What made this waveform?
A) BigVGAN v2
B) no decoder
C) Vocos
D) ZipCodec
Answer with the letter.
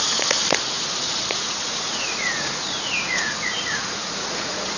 C